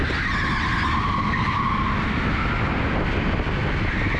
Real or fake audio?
real